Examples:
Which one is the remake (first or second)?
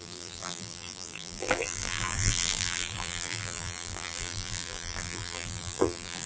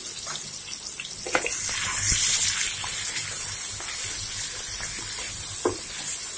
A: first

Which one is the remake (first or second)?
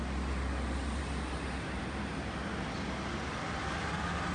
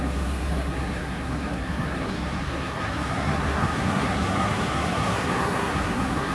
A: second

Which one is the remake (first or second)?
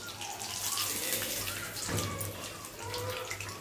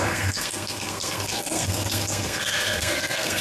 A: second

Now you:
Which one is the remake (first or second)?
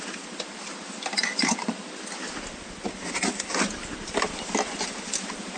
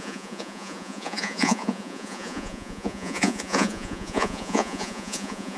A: second